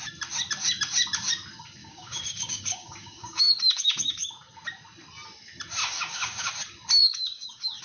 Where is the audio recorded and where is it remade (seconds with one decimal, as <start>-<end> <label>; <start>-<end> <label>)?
0.0-1.8 recorded; 1.8-4.3 remade; 4.3-5.8 recorded; 5.8-6.5 remade; 6.5-7.0 recorded; 7.0-7.8 remade